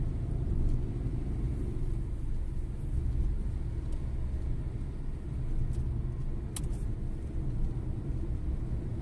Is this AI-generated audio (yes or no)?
no